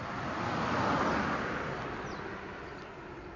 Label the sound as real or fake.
real